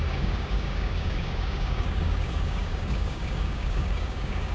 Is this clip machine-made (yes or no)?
yes